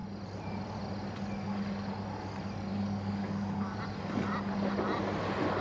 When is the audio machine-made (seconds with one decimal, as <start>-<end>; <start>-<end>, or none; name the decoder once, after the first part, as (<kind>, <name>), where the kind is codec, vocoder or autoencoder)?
2.7-3.8 (codec, DAC)